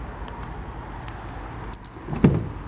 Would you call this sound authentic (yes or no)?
yes